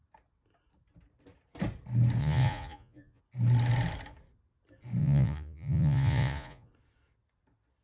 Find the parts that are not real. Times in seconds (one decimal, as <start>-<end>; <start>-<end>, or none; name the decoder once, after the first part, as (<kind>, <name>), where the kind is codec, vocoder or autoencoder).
2.2-3.2 (vocoder, Vocos); 5.0-6.7